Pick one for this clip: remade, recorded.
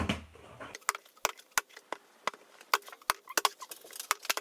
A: recorded